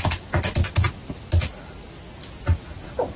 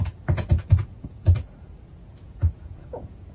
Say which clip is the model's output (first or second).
second